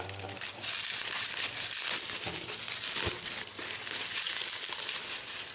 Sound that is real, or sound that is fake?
real